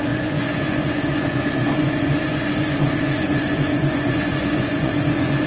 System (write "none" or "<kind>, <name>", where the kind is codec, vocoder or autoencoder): vocoder, Vocos